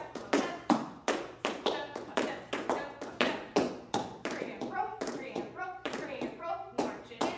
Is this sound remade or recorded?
remade